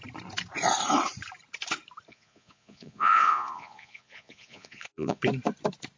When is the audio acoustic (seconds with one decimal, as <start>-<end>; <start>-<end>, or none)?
0.0-2.1; 5.2-6.0

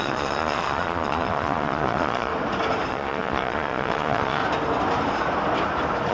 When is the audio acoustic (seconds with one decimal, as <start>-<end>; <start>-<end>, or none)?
2.3-2.9; 4.4-6.1